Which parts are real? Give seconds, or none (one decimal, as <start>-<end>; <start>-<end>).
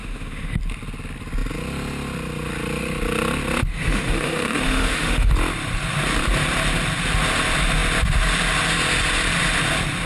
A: 0.6-3.7; 5.3-10.1